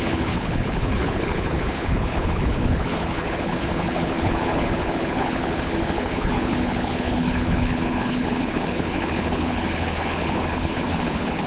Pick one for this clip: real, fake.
fake